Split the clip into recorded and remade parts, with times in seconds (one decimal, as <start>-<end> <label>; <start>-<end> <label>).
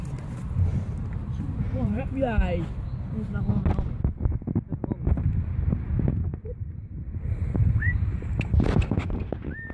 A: 0.0-1.2 recorded; 1.2-2.0 remade; 2.0-6.3 recorded; 6.3-9.2 remade; 9.2-9.7 recorded